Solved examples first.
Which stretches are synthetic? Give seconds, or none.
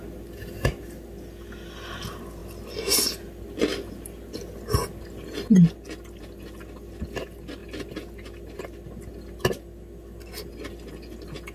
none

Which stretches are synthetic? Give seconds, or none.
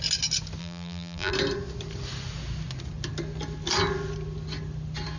0.6-1.3 (vocoder, BigVGAN v2)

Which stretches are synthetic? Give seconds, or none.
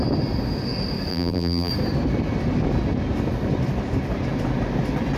1.1-1.7 (vocoder, BigVGAN v2)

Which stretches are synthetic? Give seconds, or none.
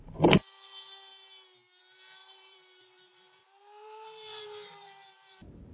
2.2-5.7 (vocoder, BigVGAN v2)